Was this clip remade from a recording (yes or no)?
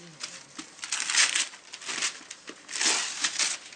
no